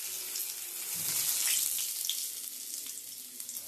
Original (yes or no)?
yes